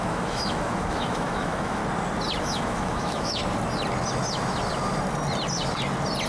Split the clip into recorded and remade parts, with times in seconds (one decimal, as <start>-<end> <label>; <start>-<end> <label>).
0.0-1.8 remade; 1.8-2.4 recorded; 2.4-3.4 remade; 3.4-6.3 recorded